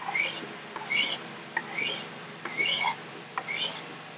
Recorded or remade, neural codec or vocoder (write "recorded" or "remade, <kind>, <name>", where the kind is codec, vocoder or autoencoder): recorded